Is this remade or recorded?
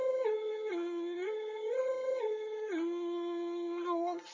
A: remade